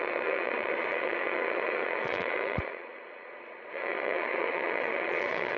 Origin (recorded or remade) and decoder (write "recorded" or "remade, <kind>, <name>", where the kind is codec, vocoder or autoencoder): remade, vocoder, Vocos